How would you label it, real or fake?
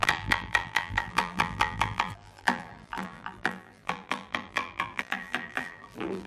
fake